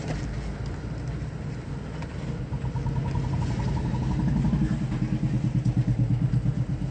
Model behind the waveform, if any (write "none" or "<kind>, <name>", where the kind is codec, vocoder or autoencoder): none